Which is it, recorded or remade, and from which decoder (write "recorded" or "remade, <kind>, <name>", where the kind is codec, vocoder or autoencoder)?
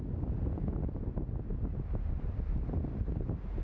recorded